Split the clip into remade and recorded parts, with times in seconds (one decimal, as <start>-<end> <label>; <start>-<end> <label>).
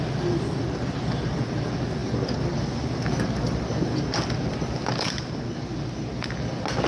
0.0-6.9 recorded